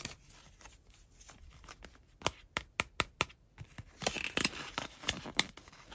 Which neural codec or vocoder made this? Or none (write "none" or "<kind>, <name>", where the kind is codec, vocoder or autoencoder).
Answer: none